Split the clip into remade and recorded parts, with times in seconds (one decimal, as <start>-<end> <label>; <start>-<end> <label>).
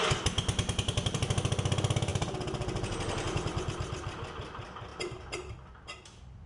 0.0-6.5 remade